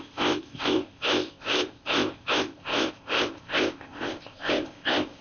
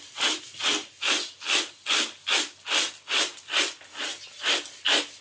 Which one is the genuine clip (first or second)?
second